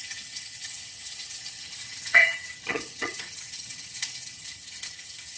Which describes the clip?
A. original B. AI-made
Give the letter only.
B